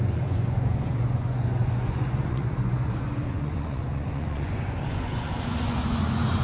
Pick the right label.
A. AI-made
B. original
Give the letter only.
A